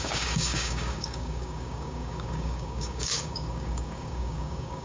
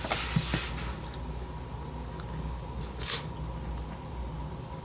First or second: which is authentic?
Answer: second